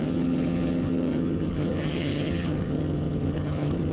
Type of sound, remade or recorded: remade